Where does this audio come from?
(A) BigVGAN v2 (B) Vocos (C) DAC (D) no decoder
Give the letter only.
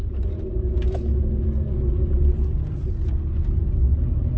D